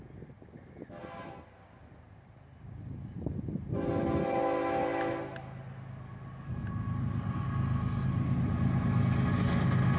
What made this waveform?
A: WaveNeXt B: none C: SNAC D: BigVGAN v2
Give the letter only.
B